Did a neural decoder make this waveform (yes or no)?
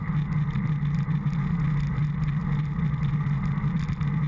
no